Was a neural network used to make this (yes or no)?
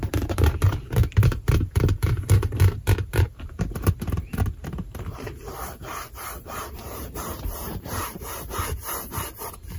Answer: yes